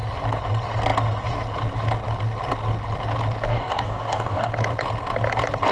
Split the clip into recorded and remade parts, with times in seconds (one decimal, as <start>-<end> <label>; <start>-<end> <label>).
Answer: 0.0-3.5 recorded; 3.5-4.5 remade; 4.5-5.7 recorded